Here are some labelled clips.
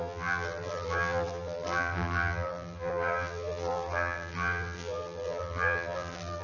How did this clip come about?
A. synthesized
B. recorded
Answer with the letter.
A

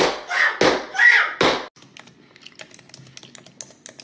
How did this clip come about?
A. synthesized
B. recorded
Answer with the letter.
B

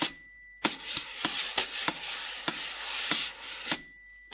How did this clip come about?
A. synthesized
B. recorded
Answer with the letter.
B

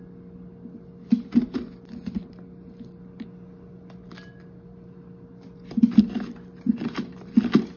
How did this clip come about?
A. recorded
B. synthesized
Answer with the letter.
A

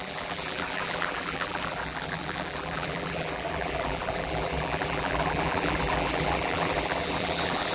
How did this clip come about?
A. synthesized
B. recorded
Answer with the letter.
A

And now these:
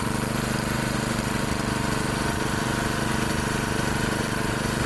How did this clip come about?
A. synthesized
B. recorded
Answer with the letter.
A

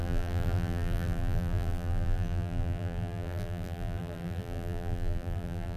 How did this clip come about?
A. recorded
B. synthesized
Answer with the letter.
B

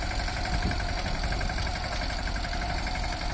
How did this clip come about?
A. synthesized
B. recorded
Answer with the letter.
A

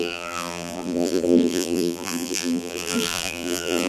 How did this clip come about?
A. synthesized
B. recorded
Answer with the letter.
A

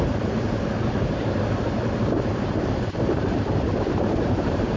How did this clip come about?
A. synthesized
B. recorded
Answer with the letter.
A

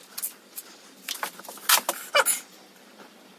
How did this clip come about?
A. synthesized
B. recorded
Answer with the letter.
B